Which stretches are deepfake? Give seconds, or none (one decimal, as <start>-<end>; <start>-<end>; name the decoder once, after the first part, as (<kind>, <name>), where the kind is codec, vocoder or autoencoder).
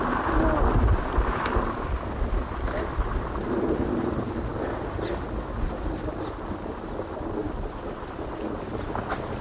none